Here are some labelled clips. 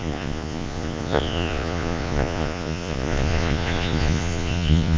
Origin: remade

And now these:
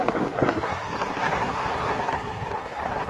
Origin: remade